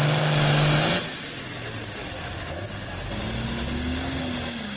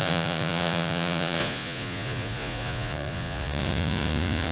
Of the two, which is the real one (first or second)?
first